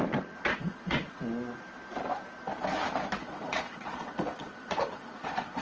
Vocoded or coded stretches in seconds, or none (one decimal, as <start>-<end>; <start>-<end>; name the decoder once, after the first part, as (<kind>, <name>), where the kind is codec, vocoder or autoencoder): 0.5-1.2 (vocoder, Vocos); 3.2-5.6